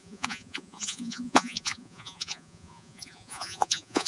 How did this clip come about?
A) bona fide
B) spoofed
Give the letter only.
B